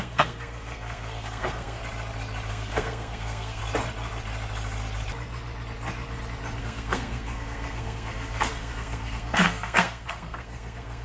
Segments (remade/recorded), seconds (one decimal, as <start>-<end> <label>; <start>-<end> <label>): 0.0-1.8 remade; 1.8-2.5 recorded; 2.5-3.6 remade; 3.6-6.6 recorded; 6.6-11.0 remade